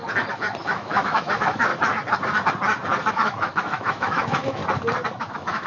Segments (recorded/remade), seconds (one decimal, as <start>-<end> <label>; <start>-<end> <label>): 0.0-0.6 recorded; 0.6-1.7 remade; 1.7-3.1 recorded; 3.1-4.6 remade; 4.6-5.2 recorded; 5.2-5.7 remade